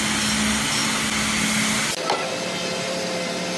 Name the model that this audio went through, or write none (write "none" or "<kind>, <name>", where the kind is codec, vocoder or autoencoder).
none